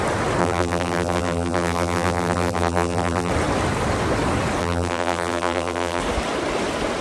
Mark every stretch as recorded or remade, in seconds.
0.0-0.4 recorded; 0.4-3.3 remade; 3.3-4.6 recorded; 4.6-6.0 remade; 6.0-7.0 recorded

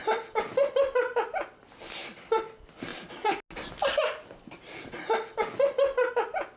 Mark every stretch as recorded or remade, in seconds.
0.0-1.7 remade; 1.7-6.6 recorded

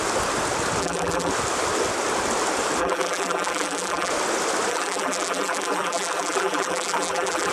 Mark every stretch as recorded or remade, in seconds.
0.0-0.8 recorded; 0.8-1.3 remade; 1.3-2.8 recorded; 2.8-4.1 remade; 4.1-4.7 recorded; 4.7-7.5 remade

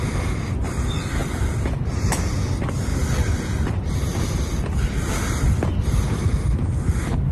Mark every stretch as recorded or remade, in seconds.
0.0-1.2 recorded; 1.2-2.4 remade; 2.4-7.3 recorded